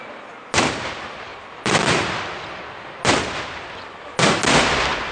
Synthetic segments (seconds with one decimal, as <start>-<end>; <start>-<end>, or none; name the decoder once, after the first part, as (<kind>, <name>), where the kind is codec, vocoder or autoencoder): none